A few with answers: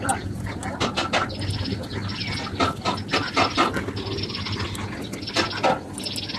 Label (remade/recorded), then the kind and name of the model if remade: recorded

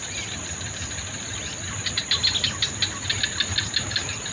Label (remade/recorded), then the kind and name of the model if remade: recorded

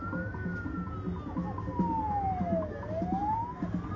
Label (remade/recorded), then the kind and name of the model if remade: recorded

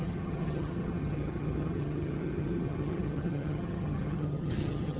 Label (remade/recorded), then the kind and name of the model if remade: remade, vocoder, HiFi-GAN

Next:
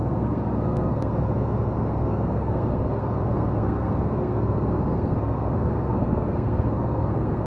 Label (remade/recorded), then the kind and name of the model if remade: remade, codec, SNAC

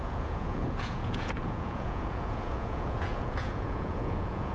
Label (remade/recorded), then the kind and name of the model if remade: remade, vocoder, Vocos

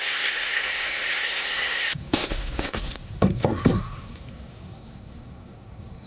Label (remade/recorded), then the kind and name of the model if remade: remade, codec, SNAC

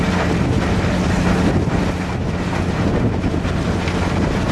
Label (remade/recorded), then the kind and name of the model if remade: recorded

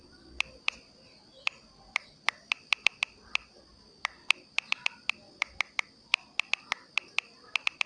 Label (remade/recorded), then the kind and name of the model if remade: recorded